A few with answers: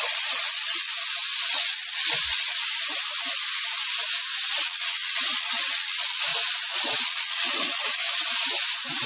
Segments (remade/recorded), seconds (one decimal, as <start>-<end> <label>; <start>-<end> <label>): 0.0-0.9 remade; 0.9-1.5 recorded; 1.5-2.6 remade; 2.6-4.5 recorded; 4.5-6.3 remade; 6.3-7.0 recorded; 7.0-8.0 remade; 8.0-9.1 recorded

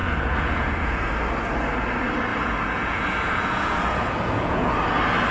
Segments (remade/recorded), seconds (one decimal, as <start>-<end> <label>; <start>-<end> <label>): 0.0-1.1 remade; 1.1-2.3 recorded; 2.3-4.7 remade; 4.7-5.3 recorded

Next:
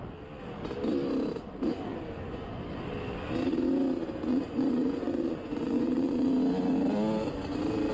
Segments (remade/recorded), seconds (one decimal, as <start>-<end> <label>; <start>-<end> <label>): 0.0-1.9 recorded; 1.9-2.5 remade; 2.5-4.3 recorded; 4.3-6.3 remade; 6.3-7.9 recorded

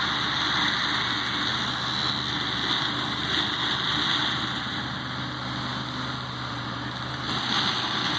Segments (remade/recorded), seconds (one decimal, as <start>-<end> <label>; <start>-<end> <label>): 0.0-8.2 recorded

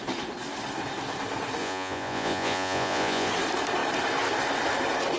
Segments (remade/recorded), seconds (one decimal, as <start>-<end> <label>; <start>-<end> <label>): 0.0-1.6 recorded; 1.6-3.3 remade; 3.3-5.2 recorded

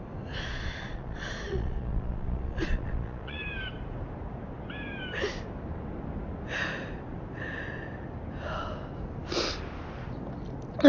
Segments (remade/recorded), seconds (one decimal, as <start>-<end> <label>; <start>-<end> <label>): 0.0-0.5 recorded; 0.5-3.4 remade; 3.4-10.9 recorded

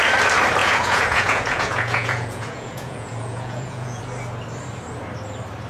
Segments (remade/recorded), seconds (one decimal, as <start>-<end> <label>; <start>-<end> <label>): 0.0-0.6 recorded; 0.6-4.0 remade; 4.0-5.7 recorded

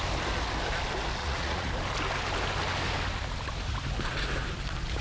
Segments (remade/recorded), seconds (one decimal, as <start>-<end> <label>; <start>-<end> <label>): 0.0-1.2 recorded; 1.2-1.7 remade; 1.7-5.0 recorded